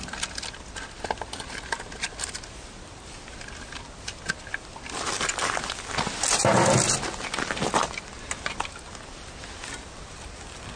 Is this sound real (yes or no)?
yes